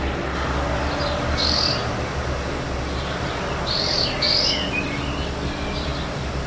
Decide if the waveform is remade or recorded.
recorded